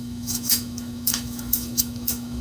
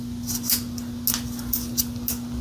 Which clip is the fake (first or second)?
first